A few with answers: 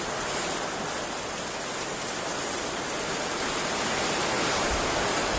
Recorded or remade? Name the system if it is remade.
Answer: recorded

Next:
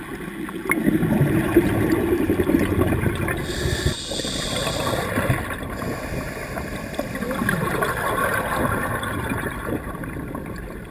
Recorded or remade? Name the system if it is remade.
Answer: recorded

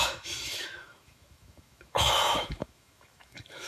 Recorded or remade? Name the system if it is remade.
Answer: remade, autoencoder, DAC-VAE